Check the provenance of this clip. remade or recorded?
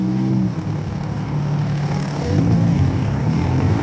remade